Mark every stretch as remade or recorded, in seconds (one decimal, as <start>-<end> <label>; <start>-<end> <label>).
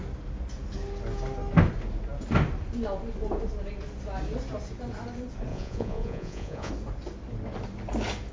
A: 0.0-5.5 recorded; 5.5-6.7 remade; 6.7-8.3 recorded